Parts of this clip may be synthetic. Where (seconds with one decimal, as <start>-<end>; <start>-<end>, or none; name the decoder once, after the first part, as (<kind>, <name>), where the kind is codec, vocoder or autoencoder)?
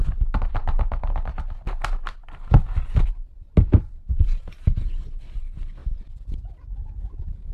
5.8-7.5 (vocoder, BigVGAN v2)